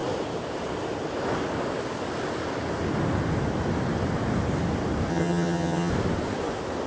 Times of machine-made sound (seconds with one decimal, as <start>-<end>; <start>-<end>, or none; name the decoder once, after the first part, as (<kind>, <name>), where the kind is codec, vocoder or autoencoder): 5.1-5.9 (vocoder, HiFi-GAN)